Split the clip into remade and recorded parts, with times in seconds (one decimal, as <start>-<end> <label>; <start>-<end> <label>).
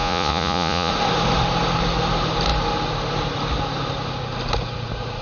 0.0-0.9 remade; 0.9-5.2 recorded